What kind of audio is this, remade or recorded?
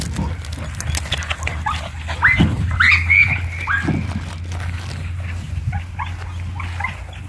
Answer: recorded